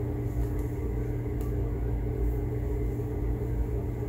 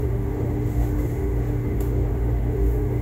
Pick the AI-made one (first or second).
second